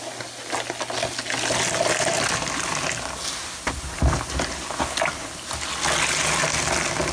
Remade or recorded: recorded